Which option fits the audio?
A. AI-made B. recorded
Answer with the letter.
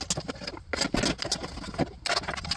B